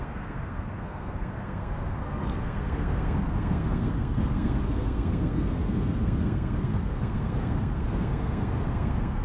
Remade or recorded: remade